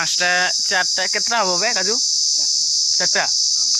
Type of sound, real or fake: real